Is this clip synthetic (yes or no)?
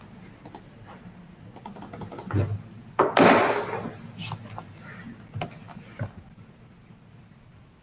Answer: no